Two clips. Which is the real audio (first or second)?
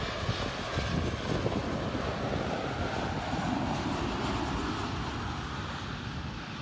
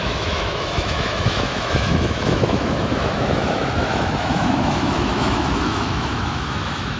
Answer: first